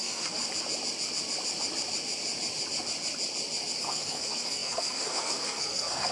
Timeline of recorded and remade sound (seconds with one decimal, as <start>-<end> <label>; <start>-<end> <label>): 0.0-0.4 remade; 0.4-3.8 recorded; 3.8-6.1 remade